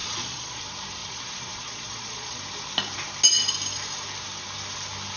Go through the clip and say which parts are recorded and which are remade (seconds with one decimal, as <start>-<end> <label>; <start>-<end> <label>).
0.0-0.6 remade; 0.6-1.0 recorded; 1.0-2.4 remade; 2.4-5.2 recorded